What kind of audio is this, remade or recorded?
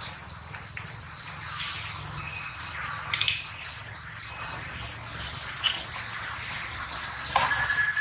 recorded